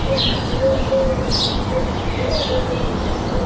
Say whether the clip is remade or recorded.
recorded